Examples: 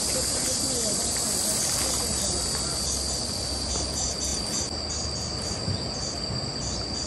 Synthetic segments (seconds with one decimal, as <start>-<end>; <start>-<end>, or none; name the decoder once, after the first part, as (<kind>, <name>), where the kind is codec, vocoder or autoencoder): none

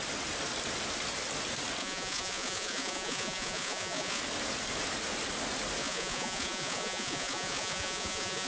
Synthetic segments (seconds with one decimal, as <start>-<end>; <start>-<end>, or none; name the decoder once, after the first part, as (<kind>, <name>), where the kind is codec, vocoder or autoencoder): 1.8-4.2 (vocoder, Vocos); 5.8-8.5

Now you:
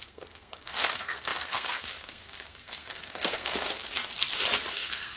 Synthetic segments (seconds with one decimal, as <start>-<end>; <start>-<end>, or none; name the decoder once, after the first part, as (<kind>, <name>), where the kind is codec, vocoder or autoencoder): 0.0-4.0 (codec, SNAC); 4.7-5.2